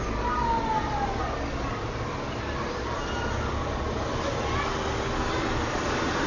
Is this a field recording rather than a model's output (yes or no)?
yes